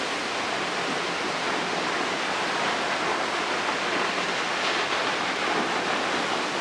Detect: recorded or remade recorded